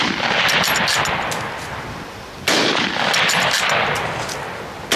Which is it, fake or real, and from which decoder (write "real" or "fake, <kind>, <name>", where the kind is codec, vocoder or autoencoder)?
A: real